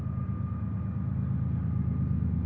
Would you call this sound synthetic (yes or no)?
no